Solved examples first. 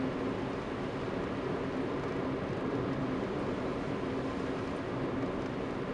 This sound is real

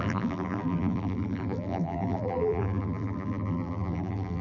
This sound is fake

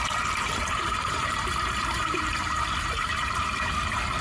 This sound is fake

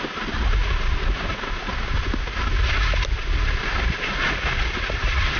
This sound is real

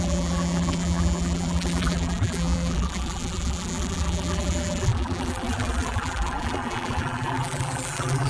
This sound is fake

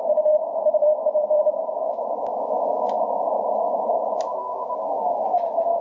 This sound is fake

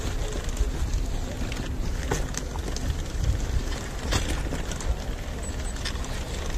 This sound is real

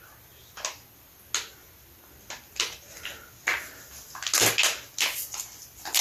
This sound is real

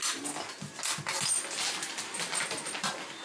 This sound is real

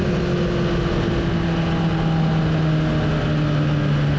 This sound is real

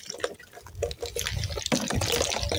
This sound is real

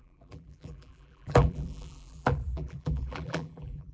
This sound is fake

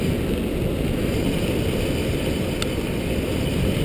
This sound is real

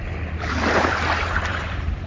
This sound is fake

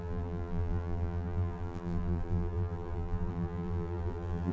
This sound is fake